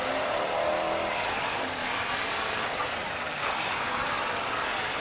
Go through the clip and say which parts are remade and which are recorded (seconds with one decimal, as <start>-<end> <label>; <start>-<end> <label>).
0.0-1.1 recorded; 1.1-1.8 remade; 1.8-5.0 recorded